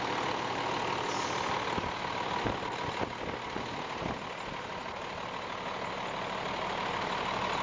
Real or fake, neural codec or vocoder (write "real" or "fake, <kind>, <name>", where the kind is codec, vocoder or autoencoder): real